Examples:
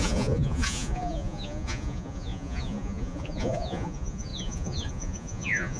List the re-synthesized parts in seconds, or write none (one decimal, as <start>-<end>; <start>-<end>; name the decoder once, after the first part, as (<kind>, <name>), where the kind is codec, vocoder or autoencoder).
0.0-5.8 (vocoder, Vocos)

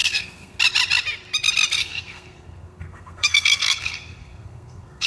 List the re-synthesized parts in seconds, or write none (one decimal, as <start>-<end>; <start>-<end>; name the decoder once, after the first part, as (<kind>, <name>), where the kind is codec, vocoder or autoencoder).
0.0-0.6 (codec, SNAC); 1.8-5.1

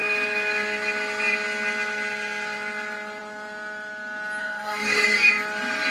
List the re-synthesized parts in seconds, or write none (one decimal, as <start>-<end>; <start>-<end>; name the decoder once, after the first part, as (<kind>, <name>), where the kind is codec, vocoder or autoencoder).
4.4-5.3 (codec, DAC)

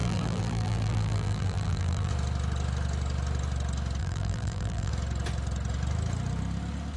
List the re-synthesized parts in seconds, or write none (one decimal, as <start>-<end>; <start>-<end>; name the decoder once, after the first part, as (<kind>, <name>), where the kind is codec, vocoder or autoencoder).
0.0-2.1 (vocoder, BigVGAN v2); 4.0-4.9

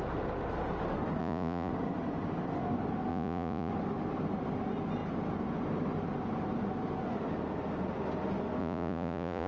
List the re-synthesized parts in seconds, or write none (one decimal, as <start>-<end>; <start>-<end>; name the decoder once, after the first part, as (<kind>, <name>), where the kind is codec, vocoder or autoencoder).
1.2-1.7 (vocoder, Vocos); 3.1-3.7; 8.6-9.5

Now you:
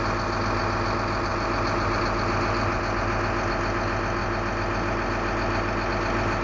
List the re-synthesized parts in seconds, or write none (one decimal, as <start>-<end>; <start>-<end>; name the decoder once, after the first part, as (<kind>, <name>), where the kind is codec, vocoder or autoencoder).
none

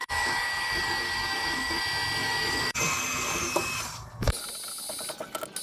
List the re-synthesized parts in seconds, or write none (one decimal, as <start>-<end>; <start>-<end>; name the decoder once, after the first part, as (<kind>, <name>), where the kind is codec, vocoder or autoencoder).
0.0-1.8 (codec, DAC); 2.2-4.4